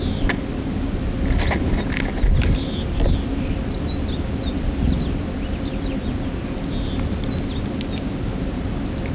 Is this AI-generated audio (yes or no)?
no